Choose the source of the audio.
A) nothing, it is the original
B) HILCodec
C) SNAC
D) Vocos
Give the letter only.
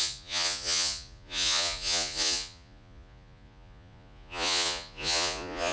D